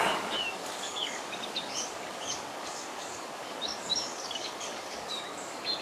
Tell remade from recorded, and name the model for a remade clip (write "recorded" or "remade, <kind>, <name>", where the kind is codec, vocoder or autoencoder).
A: remade, codec, DAC